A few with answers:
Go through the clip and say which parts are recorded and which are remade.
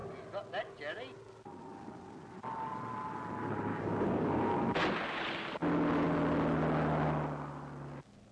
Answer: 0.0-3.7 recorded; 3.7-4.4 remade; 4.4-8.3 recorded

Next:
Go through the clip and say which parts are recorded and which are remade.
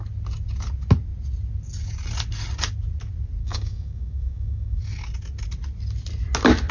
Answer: 0.0-3.4 recorded; 3.4-4.8 remade; 4.8-6.7 recorded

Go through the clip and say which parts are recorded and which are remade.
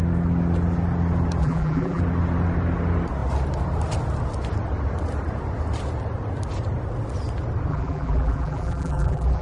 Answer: 0.0-1.4 recorded; 1.4-2.0 remade; 2.0-7.7 recorded; 7.7-9.4 remade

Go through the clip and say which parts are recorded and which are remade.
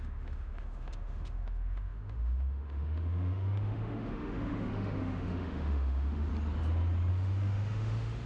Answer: 0.0-6.3 remade; 6.3-7.1 recorded; 7.1-8.3 remade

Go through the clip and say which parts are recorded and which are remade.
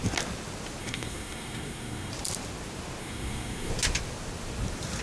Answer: 0.0-0.8 recorded; 0.8-2.1 remade; 2.1-3.0 recorded; 3.0-3.7 remade; 3.7-5.0 recorded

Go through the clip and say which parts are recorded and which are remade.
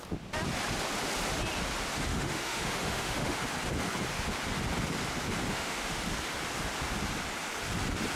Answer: 0.0-2.1 recorded; 2.1-3.4 remade; 3.4-5.5 recorded; 5.5-6.0 remade; 6.0-8.2 recorded